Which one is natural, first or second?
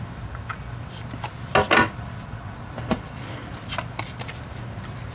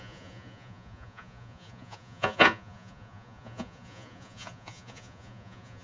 first